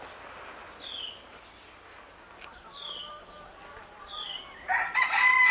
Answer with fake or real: real